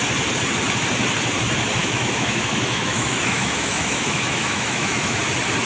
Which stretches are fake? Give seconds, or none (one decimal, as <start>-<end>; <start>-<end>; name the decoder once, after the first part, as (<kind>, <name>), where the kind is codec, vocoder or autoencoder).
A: 1.8-5.2 (autoencoder, DAC-VAE)